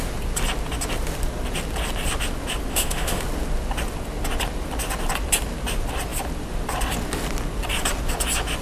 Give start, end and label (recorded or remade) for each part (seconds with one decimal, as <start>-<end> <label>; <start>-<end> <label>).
0.0-2.7 recorded; 2.7-3.2 remade; 3.2-8.6 recorded

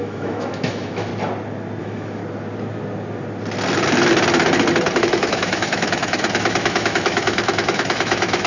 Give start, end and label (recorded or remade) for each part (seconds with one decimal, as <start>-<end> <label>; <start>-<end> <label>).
0.0-1.1 remade; 1.1-1.8 recorded; 1.8-2.2 remade; 2.2-5.0 recorded; 5.0-8.5 remade

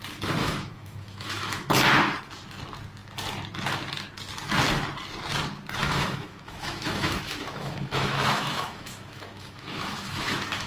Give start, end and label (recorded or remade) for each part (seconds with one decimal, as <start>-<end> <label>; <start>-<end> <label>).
0.0-0.4 recorded; 0.4-1.7 remade; 1.7-5.8 recorded; 5.8-10.7 remade

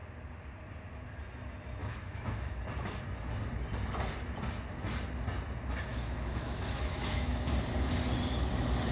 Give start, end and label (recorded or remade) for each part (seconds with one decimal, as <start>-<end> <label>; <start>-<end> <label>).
0.0-1.8 recorded; 1.8-2.6 remade; 2.6-5.9 recorded; 5.9-7.5 remade; 7.5-8.9 recorded

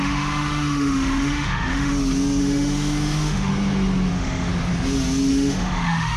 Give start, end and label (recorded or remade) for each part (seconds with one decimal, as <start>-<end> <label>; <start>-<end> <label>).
0.0-1.9 remade; 1.9-2.4 recorded; 2.4-3.5 remade; 3.5-4.1 recorded; 4.1-4.5 remade; 4.5-5.3 recorded; 5.3-6.2 remade

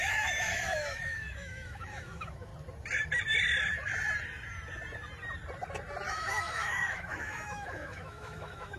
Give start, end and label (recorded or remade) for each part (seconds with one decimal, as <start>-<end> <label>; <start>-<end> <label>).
0.0-2.5 remade; 2.5-6.1 recorded; 6.1-8.8 remade